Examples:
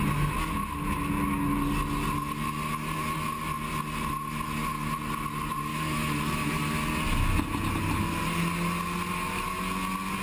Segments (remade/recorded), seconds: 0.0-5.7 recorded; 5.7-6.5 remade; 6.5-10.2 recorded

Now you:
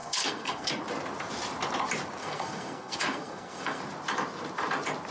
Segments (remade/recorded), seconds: 0.0-0.7 remade; 0.7-2.2 recorded; 2.2-3.8 remade; 3.8-5.1 recorded

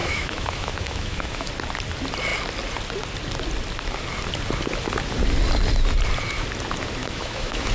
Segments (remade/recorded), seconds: 0.0-1.5 remade; 1.5-7.0 recorded; 7.0-7.7 remade

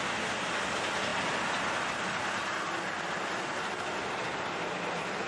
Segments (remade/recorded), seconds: 0.0-5.3 recorded

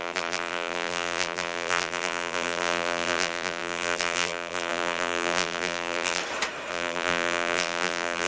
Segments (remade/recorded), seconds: 0.0-6.2 remade; 6.2-6.7 recorded; 6.7-8.3 remade